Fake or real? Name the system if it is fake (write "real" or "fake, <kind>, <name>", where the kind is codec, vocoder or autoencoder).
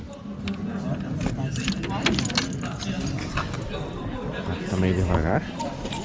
real